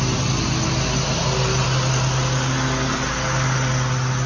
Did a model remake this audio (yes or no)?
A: no